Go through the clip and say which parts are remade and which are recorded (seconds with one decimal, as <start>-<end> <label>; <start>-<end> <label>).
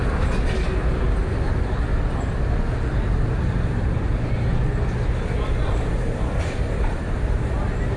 0.0-2.9 recorded; 2.9-4.1 remade; 4.1-5.7 recorded; 5.7-8.0 remade